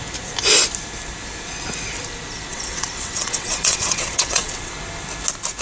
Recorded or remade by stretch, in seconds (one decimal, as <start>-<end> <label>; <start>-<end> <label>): 0.0-2.5 recorded; 2.5-4.7 remade; 4.7-5.6 recorded